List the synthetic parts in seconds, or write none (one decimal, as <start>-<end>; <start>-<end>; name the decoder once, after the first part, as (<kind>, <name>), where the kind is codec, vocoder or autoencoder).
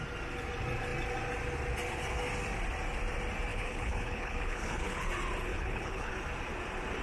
3.5-5.1 (codec, HILCodec); 5.5-6.1